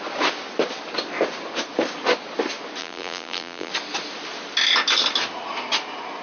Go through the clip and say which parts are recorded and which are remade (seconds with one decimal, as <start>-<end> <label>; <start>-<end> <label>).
0.0-2.8 recorded; 2.8-3.7 remade; 3.7-6.2 recorded